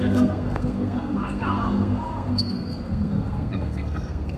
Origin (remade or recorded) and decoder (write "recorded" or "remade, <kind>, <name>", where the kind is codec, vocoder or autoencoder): remade, codec, SNAC